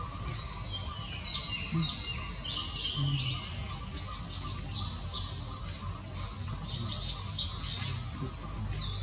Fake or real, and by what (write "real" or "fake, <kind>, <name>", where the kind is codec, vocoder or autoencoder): real